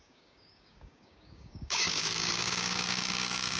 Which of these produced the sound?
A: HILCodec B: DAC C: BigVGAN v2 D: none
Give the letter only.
B